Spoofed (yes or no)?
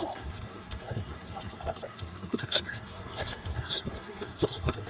yes